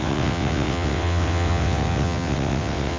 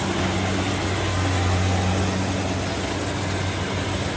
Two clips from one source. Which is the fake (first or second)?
first